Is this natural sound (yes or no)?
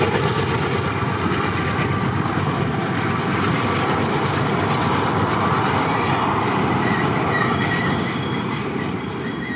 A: yes